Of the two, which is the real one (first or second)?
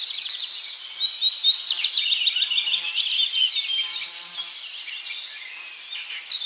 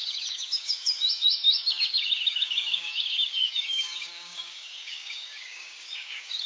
first